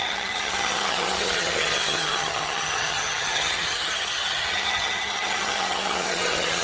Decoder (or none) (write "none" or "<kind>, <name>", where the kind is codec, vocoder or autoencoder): vocoder, HiFi-GAN